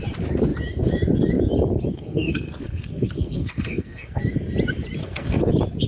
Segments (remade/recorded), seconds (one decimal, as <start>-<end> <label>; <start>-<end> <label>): 0.0-1.9 recorded; 1.9-4.2 remade; 4.2-5.0 recorded; 5.0-5.5 remade; 5.5-5.9 recorded